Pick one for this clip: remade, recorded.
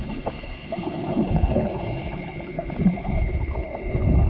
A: remade